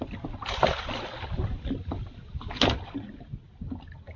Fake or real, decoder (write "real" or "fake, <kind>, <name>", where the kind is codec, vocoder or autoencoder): real